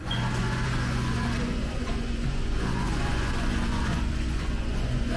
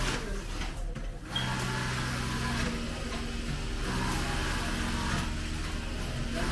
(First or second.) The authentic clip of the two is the second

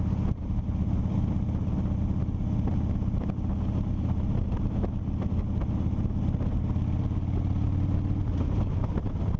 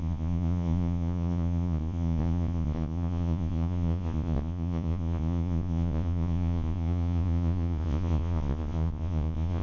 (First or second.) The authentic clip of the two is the first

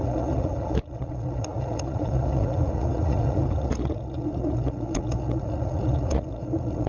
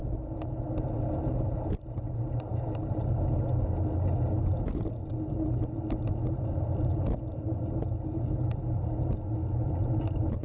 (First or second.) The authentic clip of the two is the second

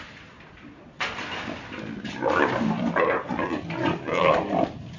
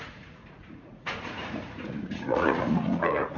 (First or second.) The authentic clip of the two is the first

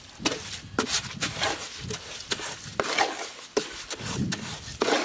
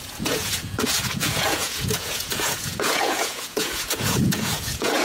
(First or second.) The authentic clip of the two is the first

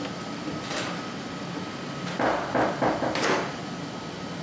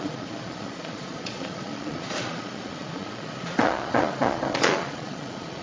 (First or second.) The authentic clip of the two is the first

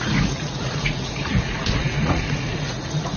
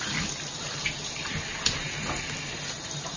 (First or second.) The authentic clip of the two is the second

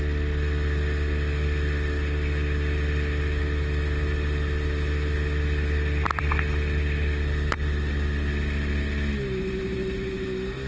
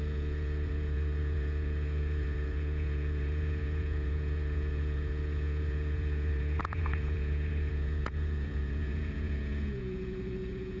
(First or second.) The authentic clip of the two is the first